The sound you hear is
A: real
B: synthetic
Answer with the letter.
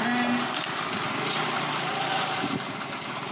A